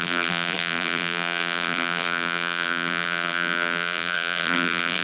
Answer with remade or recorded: remade